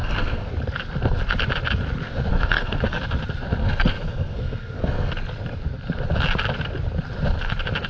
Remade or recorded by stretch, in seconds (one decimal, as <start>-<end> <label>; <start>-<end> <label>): 0.0-0.5 remade; 0.5-2.3 recorded; 2.3-3.0 remade; 3.0-3.6 recorded; 3.6-5.1 remade; 5.1-7.9 recorded